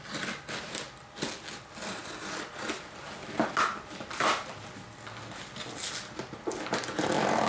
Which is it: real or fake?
real